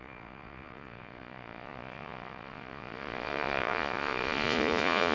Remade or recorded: remade